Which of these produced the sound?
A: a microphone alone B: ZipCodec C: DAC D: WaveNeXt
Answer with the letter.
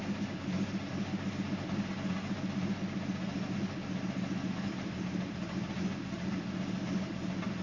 A